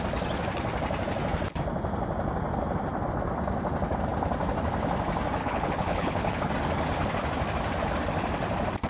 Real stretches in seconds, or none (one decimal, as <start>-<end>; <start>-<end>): 0.0-5.4; 6.5-8.9